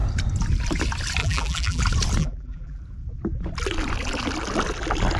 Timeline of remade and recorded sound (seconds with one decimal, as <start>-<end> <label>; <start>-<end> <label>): 0.0-1.2 recorded; 1.2-1.8 remade; 1.8-2.2 recorded; 2.2-2.8 remade; 2.8-5.2 recorded